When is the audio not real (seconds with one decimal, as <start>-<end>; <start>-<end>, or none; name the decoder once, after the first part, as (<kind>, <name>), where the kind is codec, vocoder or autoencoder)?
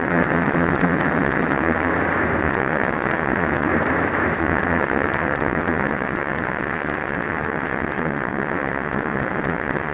0.0-1.9 (vocoder, WaveNeXt); 2.4-3.7; 4.4-9.9